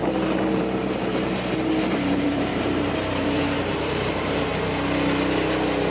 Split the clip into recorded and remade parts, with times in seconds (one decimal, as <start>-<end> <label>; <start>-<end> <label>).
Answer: 0.0-0.5 recorded; 0.5-4.5 remade; 4.5-5.9 recorded